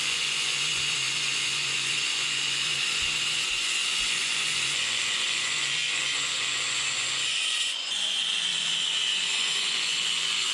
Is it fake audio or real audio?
fake